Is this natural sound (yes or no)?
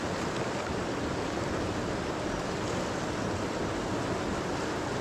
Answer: yes